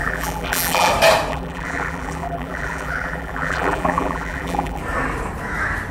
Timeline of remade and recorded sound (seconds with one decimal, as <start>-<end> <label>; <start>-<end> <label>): 0.0-0.9 remade; 0.9-1.3 recorded; 1.3-4.8 remade; 4.8-5.9 recorded